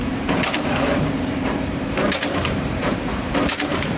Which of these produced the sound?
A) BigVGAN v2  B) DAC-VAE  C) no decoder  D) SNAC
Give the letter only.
A